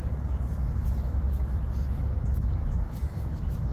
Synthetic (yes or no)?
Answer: yes